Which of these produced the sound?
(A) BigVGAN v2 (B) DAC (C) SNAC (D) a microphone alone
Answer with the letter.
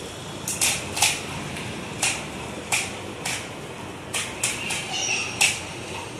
D